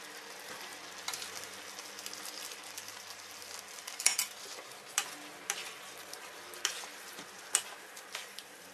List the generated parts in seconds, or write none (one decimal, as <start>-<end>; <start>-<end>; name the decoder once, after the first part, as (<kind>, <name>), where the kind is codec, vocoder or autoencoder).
none